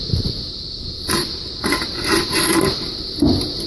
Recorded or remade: recorded